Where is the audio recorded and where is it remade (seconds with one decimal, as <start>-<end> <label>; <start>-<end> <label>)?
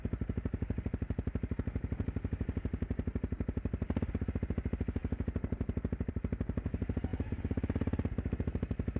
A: 0.0-9.0 recorded